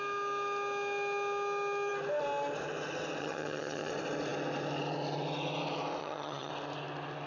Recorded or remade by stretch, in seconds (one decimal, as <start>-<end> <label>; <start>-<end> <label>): 0.0-3.2 recorded; 3.2-3.9 remade; 3.9-6.0 recorded; 6.0-6.5 remade; 6.5-7.3 recorded